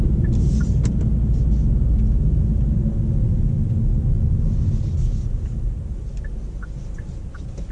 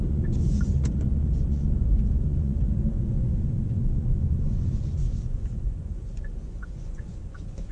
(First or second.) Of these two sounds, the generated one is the second